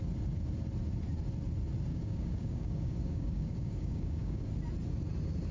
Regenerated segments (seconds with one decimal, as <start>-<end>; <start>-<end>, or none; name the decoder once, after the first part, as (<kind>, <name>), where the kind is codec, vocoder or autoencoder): 1.9-4.5 (codec, DAC)